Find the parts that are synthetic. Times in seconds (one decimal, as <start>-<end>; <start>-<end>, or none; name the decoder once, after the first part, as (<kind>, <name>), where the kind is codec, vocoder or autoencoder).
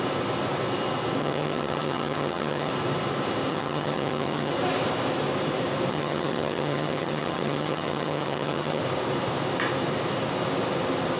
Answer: 1.2-2.7 (vocoder, HiFi-GAN); 3.5-4.5; 5.9-8.8